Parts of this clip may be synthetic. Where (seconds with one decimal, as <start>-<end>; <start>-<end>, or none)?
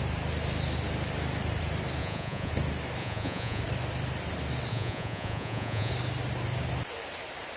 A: 2.0-2.5; 3.0-3.6; 4.7-5.9